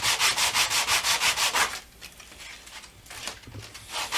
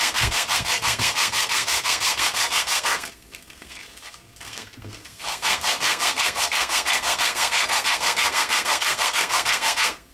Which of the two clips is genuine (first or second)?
first